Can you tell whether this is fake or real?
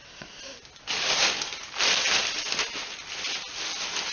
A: real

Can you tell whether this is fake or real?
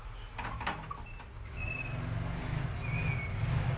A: real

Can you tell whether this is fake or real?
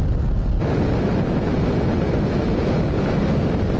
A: real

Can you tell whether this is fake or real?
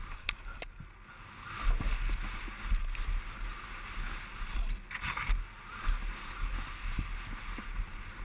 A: real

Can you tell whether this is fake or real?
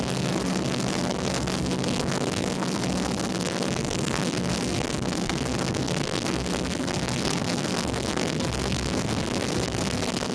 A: fake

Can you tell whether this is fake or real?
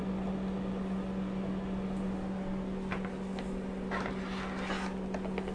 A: real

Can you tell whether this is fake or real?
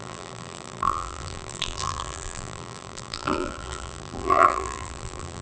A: fake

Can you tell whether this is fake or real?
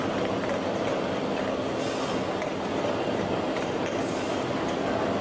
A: real